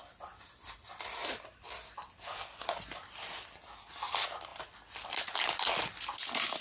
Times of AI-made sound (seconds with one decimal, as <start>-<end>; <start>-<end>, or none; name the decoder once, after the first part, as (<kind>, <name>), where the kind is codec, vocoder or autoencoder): 1.2-2.5 (vocoder, BigVGAN v2)